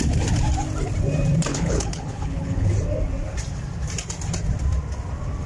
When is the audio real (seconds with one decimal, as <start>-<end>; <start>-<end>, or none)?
0.0-1.5; 2.7-5.5